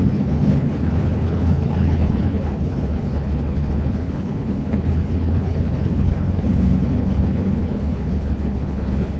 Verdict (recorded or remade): remade